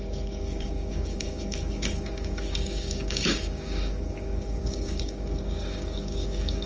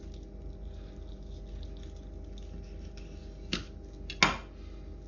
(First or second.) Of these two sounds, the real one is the second